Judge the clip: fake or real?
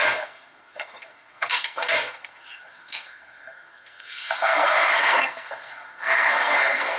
fake